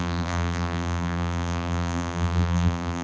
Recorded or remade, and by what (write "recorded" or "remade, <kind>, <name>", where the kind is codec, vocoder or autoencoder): remade, vocoder, BigVGAN v2